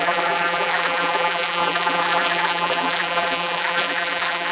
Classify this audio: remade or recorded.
remade